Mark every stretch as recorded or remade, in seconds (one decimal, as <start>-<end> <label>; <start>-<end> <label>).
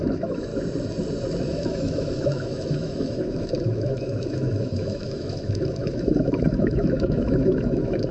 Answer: 0.0-0.5 remade; 0.5-1.5 recorded; 1.5-8.1 remade